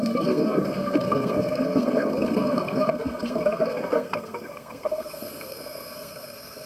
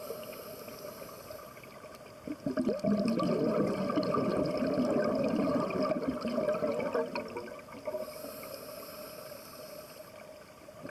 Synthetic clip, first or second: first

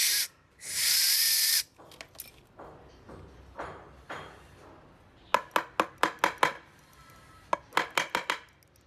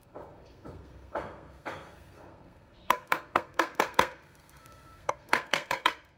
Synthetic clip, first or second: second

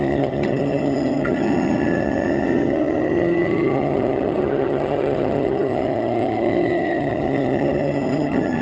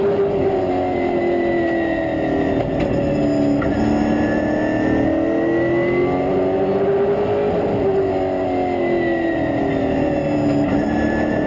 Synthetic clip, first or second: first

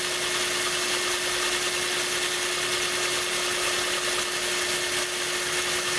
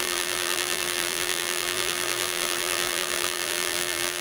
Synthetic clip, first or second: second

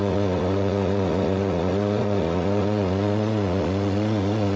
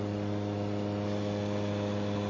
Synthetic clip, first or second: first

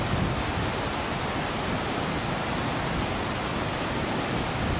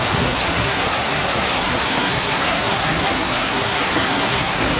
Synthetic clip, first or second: second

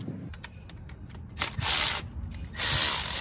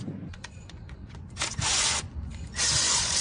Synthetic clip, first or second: second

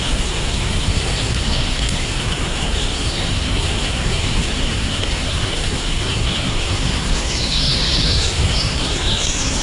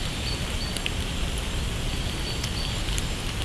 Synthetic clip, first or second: first